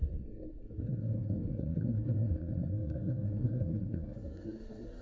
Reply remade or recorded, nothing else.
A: remade